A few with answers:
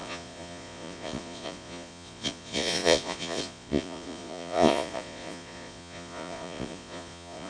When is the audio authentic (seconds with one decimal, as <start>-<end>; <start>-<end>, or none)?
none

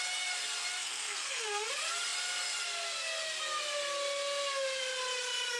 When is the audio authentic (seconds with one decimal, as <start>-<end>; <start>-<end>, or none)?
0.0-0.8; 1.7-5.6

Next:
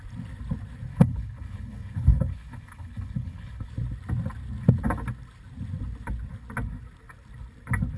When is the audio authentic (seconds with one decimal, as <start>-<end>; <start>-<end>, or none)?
0.0-0.9; 3.7-8.0

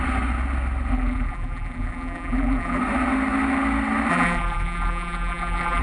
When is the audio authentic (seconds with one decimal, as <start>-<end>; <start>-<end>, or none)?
0.0-0.9; 2.8-4.1